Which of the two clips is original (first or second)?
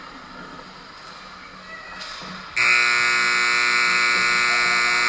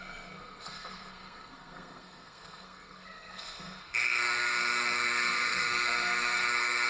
first